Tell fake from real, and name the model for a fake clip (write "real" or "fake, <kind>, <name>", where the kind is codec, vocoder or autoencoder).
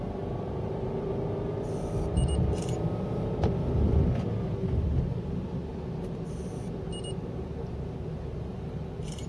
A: real